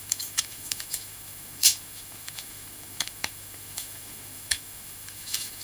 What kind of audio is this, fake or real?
fake